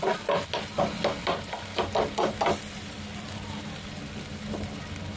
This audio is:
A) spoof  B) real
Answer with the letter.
B